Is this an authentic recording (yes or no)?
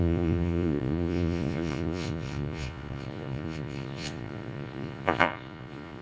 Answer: no